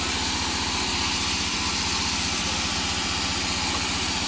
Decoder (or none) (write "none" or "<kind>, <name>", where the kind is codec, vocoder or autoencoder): none